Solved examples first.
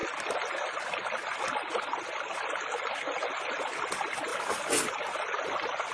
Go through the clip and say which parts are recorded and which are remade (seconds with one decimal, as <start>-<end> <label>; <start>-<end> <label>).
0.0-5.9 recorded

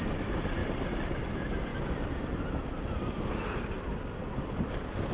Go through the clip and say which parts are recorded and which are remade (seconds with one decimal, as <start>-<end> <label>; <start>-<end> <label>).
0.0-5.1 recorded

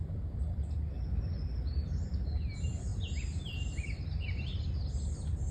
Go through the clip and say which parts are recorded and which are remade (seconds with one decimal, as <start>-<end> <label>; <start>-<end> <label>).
0.0-2.9 recorded; 2.9-4.6 remade; 4.6-5.5 recorded